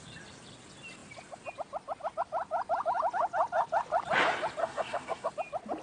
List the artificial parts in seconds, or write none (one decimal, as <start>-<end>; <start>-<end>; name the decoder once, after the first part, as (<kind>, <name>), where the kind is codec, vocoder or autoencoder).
4.6-5.3 (codec, SNAC)